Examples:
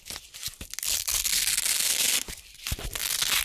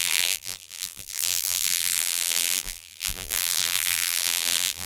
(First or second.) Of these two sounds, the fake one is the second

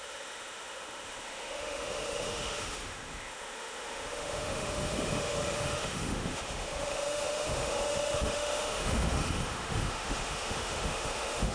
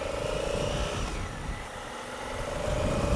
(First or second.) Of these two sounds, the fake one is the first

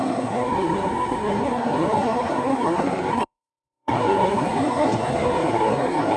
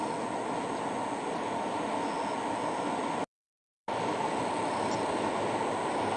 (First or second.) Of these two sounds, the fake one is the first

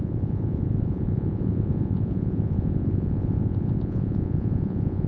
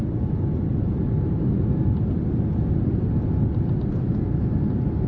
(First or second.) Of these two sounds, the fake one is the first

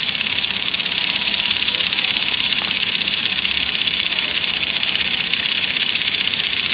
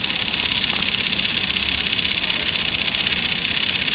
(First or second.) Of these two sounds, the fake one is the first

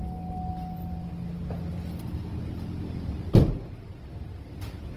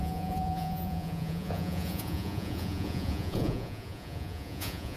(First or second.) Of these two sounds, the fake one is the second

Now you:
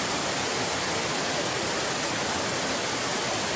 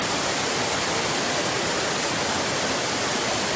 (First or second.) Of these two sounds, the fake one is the second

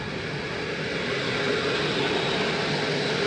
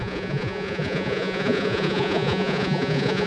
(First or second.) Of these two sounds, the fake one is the second